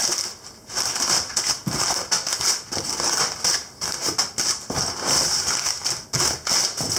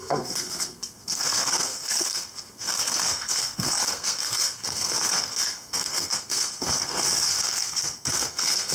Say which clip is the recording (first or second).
first